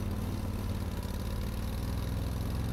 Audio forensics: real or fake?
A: real